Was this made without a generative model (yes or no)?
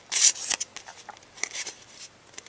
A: yes